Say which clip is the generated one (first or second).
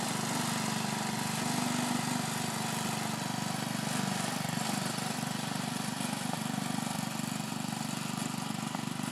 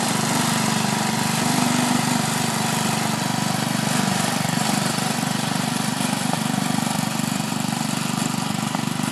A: second